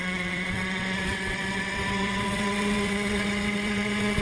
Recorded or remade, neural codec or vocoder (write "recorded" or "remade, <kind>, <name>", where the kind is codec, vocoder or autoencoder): remade, vocoder, WaveNeXt